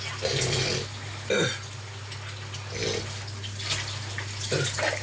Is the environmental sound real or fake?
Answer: real